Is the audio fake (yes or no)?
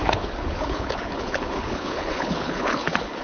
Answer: yes